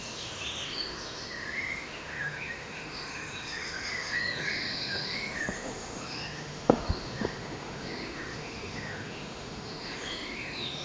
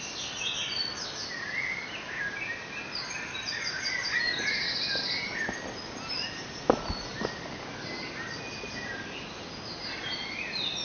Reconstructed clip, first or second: first